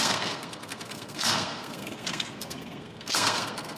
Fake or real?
fake